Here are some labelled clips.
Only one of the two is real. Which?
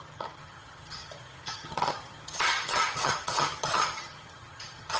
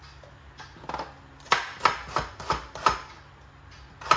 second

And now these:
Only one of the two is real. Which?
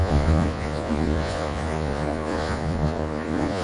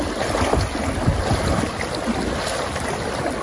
second